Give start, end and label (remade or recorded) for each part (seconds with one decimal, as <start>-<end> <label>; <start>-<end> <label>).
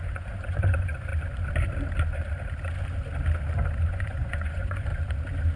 0.0-1.1 remade; 1.1-3.8 recorded; 3.8-4.9 remade; 4.9-5.6 recorded